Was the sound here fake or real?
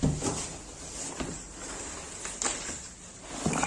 real